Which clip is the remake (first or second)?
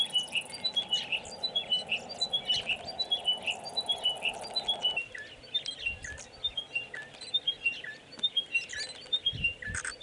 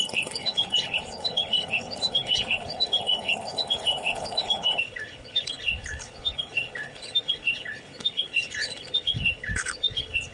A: second